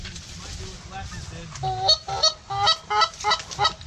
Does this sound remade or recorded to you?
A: recorded